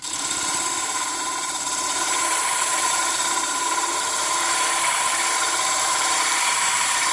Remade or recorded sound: remade